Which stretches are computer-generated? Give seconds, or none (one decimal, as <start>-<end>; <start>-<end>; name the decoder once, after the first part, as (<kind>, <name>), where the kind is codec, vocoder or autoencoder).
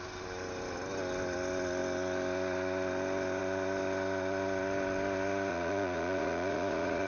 5.5-7.1 (vocoder, Vocos)